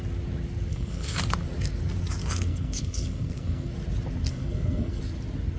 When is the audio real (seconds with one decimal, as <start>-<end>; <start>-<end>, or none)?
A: 0.0-0.7; 1.2-2.2; 3.7-4.3; 5.0-5.6